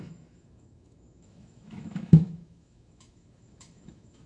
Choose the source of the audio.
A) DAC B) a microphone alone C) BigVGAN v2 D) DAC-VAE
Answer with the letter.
D